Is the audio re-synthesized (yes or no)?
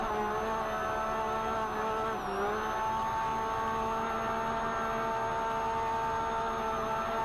no